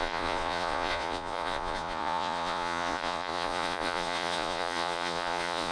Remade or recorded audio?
remade